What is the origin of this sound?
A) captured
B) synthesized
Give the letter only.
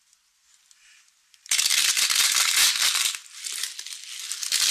A